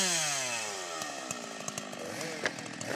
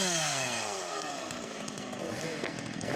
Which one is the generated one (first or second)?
second